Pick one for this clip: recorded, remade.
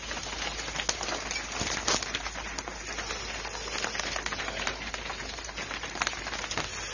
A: recorded